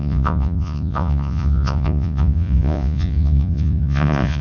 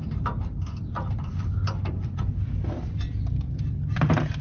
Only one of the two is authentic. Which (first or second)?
second